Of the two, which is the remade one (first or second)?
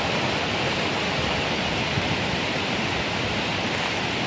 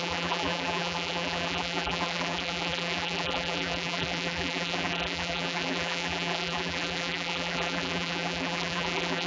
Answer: second